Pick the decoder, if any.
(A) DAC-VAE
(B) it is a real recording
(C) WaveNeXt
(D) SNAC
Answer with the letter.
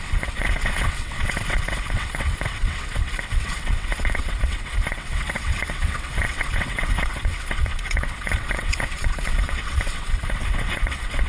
C